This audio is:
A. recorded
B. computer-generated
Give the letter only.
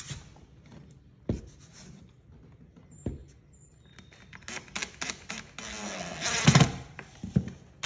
A